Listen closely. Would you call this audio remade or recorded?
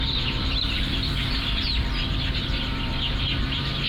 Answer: remade